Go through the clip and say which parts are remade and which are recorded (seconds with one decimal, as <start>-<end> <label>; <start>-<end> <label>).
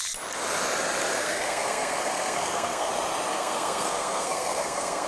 0.0-1.1 recorded; 1.1-2.9 remade; 2.9-3.3 recorded; 3.3-5.1 remade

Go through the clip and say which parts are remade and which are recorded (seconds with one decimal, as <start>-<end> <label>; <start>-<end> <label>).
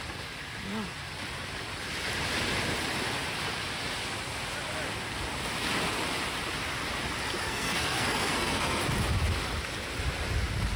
0.0-7.4 recorded; 7.4-8.8 remade; 8.8-10.8 recorded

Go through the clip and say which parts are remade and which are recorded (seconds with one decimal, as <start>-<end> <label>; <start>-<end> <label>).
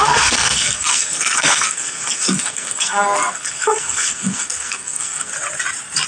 0.0-5.3 remade; 5.3-6.1 recorded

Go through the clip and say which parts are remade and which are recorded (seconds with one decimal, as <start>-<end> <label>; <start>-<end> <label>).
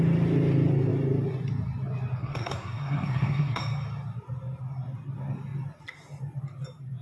0.0-2.2 recorded; 2.2-3.6 remade; 3.6-7.0 recorded